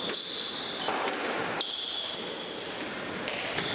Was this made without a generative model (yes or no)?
yes